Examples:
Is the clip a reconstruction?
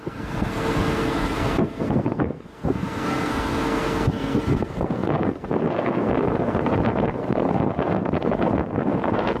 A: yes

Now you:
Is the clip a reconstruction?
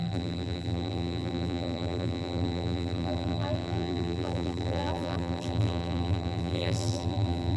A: yes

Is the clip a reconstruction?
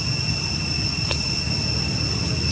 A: no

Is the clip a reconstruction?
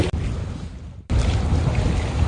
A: no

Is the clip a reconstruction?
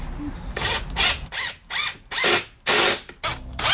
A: no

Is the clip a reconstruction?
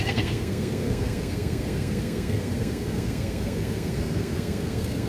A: yes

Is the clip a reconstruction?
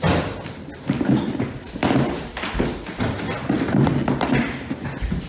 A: no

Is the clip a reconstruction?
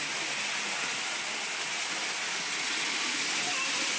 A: no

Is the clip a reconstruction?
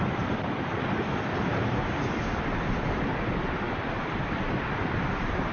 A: yes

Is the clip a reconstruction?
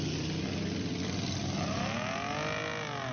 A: no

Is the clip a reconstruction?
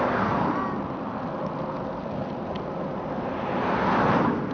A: no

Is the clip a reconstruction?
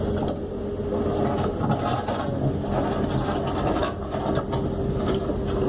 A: no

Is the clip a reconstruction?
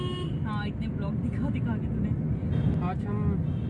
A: no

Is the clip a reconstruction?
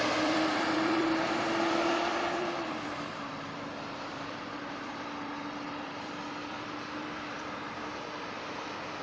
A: yes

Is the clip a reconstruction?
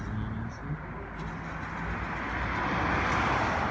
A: no